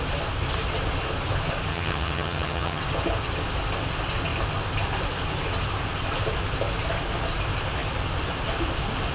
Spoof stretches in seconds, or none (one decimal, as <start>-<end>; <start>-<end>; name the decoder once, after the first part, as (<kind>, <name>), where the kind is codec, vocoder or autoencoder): 1.7-2.8 (vocoder, HiFi-GAN)